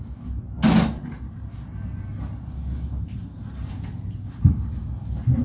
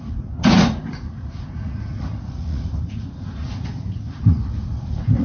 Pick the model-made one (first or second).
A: second